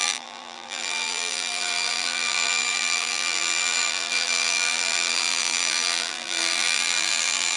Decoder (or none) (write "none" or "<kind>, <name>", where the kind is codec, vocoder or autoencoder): vocoder, BigVGAN v2